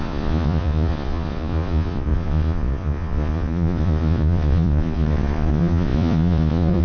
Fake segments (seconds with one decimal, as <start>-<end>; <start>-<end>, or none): 0.0-6.8